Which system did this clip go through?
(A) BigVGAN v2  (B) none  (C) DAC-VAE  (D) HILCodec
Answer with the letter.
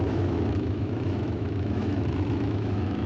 C